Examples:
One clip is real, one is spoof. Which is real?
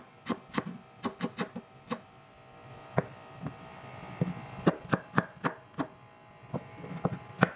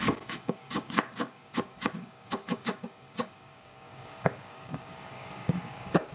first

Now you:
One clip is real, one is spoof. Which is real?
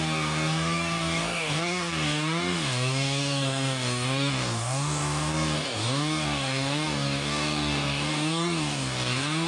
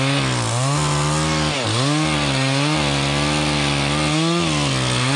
second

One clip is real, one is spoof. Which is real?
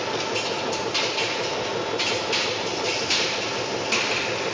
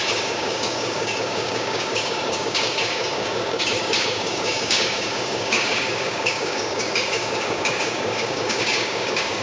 first